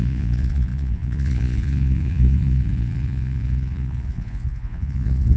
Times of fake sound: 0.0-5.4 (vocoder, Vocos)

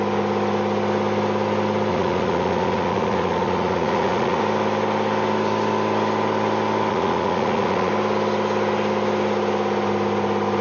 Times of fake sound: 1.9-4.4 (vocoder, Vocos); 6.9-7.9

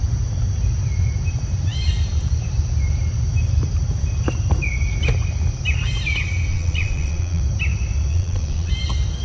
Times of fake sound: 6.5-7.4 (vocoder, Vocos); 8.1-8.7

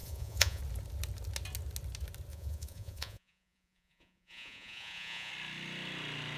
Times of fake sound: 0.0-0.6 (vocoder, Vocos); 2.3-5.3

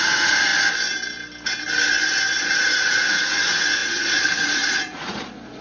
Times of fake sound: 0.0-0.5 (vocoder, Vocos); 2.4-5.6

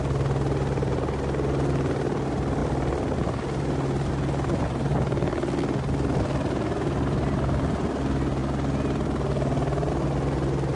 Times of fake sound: none